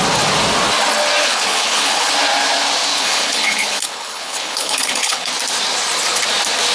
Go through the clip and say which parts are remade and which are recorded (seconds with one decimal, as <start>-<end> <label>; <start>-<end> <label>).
0.0-1.2 recorded; 1.2-2.1 remade; 2.1-2.9 recorded; 2.9-5.3 remade; 5.3-6.7 recorded